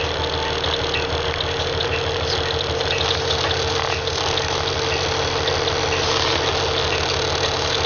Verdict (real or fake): real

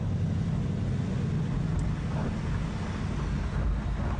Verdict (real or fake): real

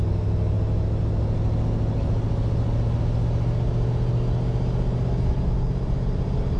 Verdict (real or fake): real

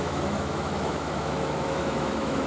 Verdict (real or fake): fake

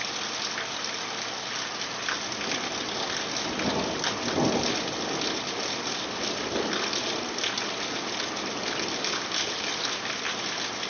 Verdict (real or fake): real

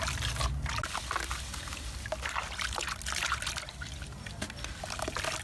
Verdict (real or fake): real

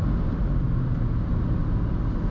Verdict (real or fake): real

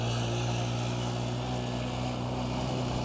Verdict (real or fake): real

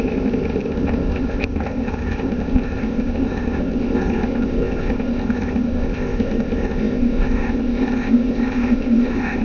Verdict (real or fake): fake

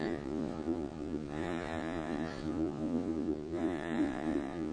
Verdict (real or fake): fake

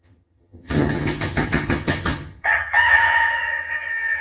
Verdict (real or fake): fake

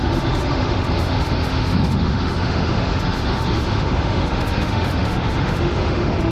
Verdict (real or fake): fake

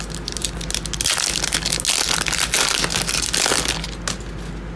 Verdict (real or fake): real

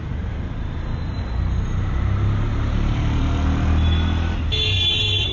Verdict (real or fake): real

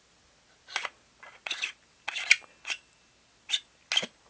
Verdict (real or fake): real